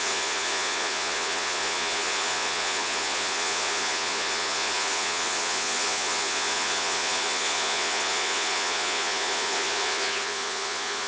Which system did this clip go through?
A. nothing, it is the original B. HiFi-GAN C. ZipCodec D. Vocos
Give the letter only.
D